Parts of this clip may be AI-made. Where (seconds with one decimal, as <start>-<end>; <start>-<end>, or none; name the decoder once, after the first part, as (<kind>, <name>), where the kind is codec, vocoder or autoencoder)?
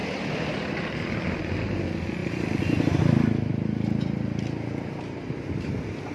none